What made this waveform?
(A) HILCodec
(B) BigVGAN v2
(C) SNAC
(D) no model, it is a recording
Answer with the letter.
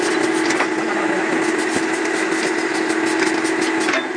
D